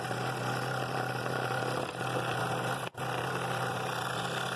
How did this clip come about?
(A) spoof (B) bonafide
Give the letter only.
B